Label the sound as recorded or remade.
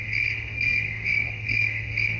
remade